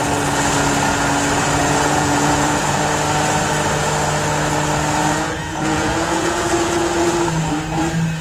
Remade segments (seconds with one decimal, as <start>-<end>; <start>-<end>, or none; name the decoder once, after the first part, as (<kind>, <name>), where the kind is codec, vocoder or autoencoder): 1.6-2.8 (vocoder, Vocos); 5.0-7.1